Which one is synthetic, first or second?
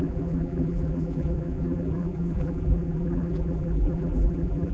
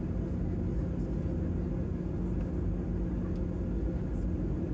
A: first